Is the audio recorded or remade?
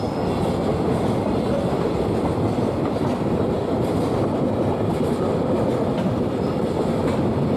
recorded